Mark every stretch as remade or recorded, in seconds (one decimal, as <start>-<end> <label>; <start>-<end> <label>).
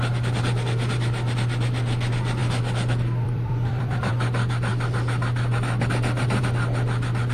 0.0-7.3 remade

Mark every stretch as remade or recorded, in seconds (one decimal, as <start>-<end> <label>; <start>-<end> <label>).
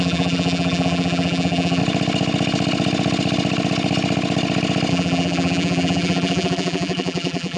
0.0-1.8 remade; 1.8-4.9 recorded; 4.9-7.6 remade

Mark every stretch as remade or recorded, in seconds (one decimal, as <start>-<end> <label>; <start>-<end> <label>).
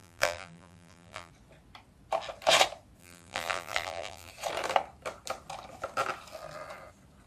0.0-1.3 remade; 1.3-3.0 recorded; 3.0-4.3 remade; 4.3-7.3 recorded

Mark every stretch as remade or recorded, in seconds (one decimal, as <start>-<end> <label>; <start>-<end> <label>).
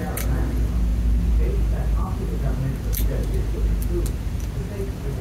0.0-5.2 recorded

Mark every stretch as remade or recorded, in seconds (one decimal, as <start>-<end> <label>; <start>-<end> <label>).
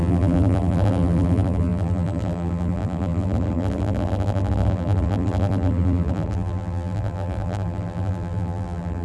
0.0-9.0 remade